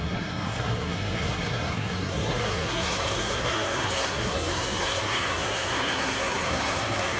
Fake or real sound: fake